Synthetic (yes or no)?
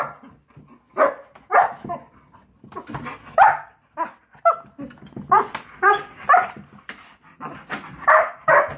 no